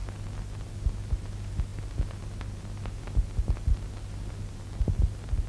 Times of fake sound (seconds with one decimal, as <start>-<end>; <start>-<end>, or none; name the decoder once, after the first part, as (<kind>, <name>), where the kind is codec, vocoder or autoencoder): none